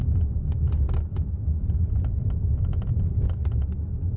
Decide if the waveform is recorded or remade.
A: recorded